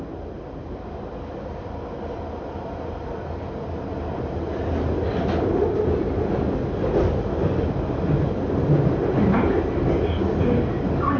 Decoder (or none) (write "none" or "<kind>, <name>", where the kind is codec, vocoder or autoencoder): none